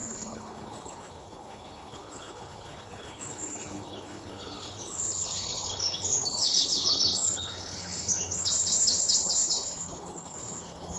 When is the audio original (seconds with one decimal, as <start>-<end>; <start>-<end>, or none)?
none

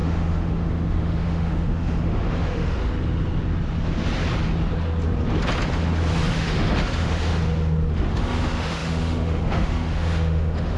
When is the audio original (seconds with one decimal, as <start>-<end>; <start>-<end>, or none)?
2.8-6.3; 7.4-7.9

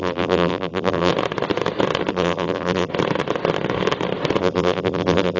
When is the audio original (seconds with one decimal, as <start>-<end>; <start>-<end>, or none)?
1.1-2.1; 2.9-4.4

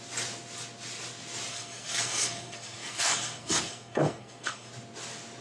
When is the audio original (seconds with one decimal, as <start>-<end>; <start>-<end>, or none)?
0.0-1.5; 4.7-5.4

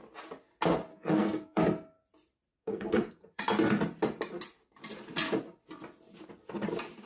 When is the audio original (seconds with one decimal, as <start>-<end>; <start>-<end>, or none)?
0.0-0.9; 1.6-2.6; 3.4-7.1